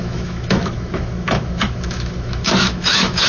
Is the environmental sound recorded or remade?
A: remade